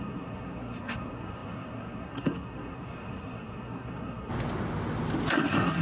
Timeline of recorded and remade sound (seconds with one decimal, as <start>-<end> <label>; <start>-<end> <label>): 0.0-4.3 remade; 4.3-5.3 recorded; 5.3-5.8 remade